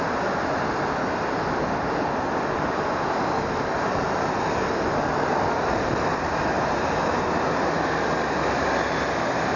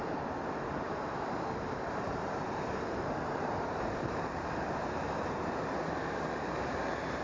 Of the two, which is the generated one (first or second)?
second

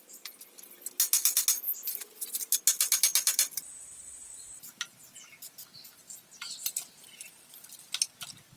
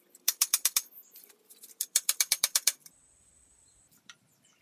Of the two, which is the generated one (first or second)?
second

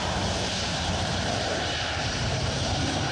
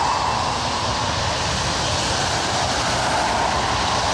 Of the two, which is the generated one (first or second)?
first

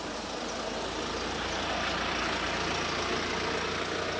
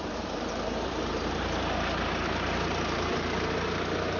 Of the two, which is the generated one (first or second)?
second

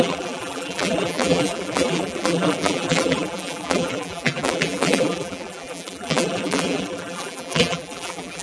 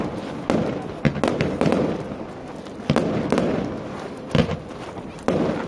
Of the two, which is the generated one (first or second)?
first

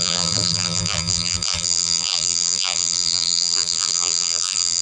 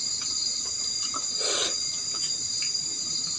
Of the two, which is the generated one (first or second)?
first